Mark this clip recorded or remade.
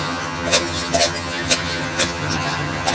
remade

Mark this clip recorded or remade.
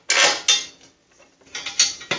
recorded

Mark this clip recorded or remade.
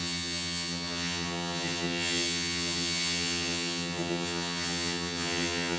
remade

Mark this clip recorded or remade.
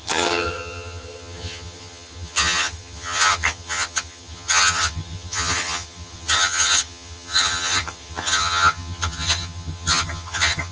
remade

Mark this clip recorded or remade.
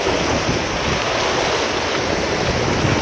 recorded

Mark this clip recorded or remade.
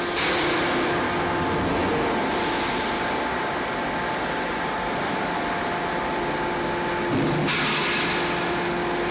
recorded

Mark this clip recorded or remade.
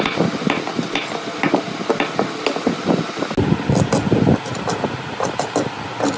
recorded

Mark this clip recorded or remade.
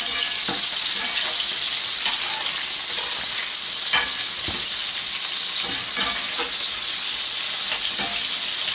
recorded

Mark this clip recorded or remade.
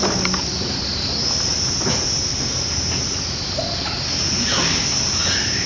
recorded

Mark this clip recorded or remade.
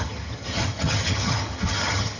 remade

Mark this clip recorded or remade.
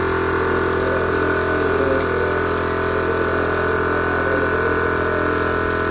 recorded